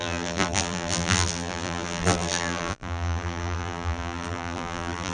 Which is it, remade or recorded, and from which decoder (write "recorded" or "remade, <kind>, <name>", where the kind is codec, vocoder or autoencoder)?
remade, vocoder, BigVGAN v2